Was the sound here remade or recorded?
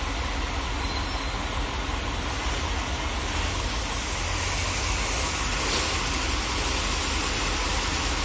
recorded